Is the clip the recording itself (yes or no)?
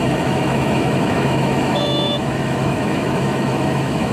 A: no